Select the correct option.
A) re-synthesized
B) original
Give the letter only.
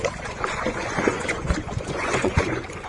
A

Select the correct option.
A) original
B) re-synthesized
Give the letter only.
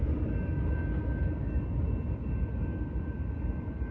A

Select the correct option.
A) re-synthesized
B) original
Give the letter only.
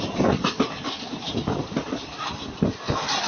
B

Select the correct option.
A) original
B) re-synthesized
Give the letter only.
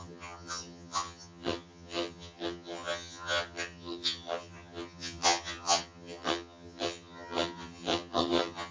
B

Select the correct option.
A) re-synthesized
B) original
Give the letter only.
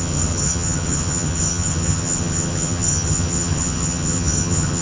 A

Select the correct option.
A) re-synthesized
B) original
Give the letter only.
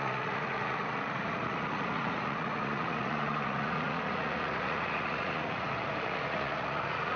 A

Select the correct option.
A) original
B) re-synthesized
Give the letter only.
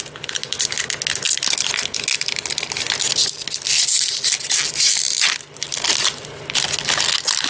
A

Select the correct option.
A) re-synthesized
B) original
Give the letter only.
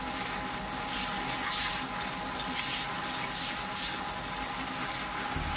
B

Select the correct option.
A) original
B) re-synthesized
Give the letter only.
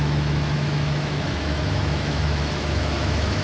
B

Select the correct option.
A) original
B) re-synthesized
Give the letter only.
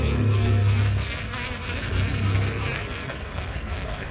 B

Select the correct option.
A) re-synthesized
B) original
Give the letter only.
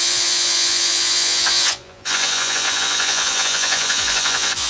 A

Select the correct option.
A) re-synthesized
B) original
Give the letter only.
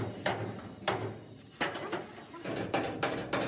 B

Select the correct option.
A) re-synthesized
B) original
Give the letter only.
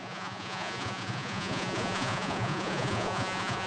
A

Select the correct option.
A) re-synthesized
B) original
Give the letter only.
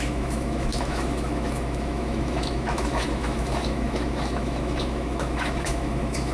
A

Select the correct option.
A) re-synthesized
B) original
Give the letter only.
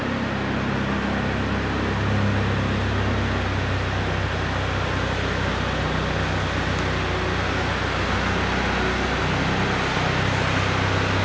B